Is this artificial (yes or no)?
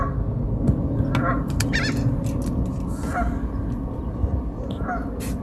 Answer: no